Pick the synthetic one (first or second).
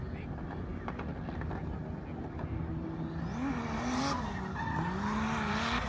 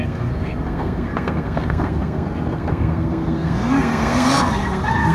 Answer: second